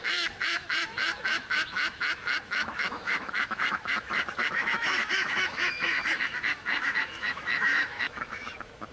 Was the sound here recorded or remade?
remade